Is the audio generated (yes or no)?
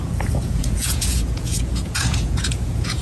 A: yes